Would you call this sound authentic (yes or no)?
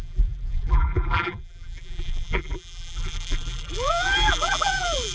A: no